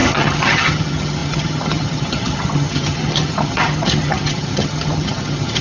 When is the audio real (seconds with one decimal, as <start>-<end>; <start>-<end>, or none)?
none